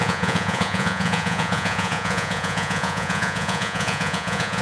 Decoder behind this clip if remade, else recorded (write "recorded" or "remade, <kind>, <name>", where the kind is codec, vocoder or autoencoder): remade, vocoder, Vocos